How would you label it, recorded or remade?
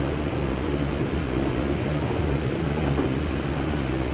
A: remade